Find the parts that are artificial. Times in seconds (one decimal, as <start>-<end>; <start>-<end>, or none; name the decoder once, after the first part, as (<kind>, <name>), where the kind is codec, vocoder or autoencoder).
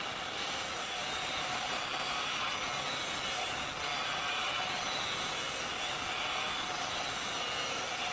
1.0-1.8 (vocoder, BigVGAN v2)